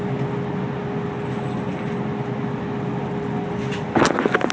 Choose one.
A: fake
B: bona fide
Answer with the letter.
B